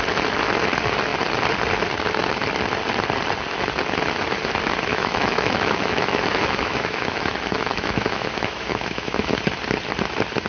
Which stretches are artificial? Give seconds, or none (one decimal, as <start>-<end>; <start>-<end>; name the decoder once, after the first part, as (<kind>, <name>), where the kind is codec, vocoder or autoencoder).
4.9-9.4 (autoencoder, DAC-VAE)